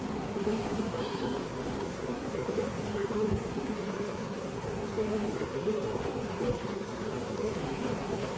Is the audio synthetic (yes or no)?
yes